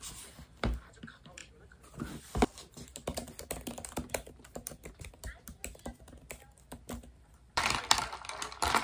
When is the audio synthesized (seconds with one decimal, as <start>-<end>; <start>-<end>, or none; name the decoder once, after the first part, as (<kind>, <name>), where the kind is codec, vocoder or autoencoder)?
0.0-5.6 (vocoder, BigVGAN v2); 6.3-8.8